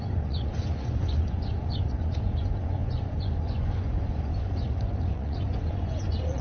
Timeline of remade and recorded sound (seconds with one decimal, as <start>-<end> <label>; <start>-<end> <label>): 0.0-6.4 remade